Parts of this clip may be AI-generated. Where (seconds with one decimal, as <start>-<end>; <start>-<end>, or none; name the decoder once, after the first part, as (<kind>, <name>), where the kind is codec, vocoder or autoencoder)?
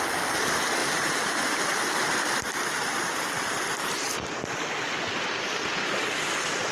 0.8-2.5 (vocoder, BigVGAN v2)